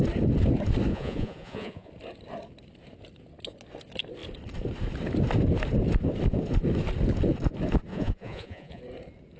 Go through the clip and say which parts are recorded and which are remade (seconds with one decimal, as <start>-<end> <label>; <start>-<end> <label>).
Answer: 0.0-0.9 recorded; 0.9-1.9 remade; 1.9-7.9 recorded; 7.9-8.8 remade; 8.8-9.4 recorded